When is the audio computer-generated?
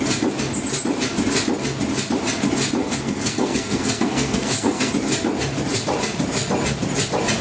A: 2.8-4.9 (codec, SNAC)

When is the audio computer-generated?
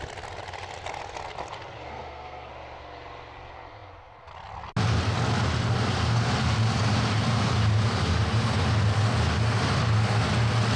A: 1.9-2.5 (codec, SNAC)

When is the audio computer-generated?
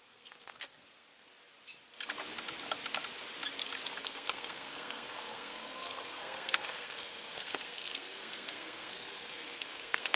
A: 0.0-1.3 (codec, SNAC); 4.0-10.2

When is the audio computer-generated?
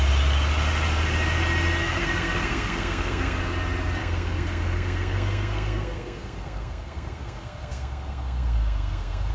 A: 1.8-3.4 (codec, SNAC); 4.0-9.3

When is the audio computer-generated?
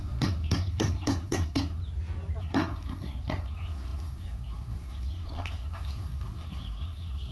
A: 0.0-1.8 (codec, SNAC); 2.4-7.3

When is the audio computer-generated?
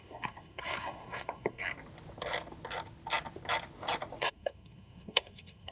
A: 0.0-1.6 (codec, SNAC); 4.2-5.7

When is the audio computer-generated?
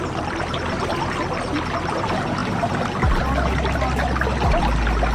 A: none